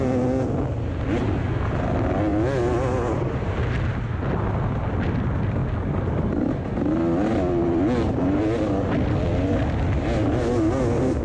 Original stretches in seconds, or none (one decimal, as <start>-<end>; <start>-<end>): 0.0-11.2